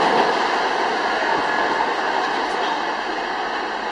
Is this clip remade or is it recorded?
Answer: recorded